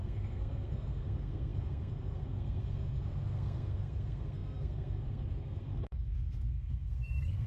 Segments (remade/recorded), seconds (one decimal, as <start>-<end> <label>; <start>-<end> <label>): 0.0-7.5 remade